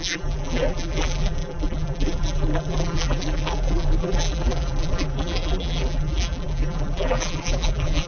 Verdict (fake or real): fake